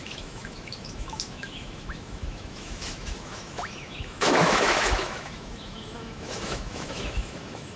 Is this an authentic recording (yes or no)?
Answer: no